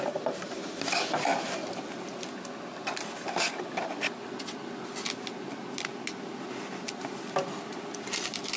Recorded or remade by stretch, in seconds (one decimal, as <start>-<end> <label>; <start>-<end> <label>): 0.0-8.6 recorded